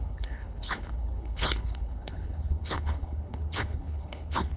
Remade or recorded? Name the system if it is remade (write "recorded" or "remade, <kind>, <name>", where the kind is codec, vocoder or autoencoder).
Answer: remade, codec, HILCodec